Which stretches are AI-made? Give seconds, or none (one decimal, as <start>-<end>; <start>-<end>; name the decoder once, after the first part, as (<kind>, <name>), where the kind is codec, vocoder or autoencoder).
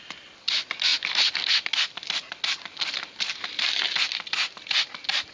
none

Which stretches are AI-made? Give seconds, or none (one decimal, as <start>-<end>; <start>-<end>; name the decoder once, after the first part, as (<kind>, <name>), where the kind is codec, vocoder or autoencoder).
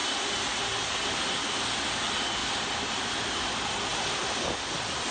none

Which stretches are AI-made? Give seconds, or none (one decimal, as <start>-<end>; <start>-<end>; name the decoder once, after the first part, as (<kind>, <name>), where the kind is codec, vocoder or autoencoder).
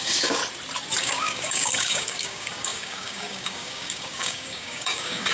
0.0-0.4 (codec, DAC); 1.0-5.3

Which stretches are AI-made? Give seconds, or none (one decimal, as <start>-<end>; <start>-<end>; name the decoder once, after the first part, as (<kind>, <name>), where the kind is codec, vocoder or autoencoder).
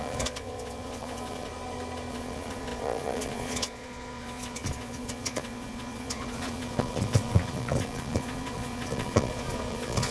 0.0-1.5 (vocoder, Vocos); 2.1-10.1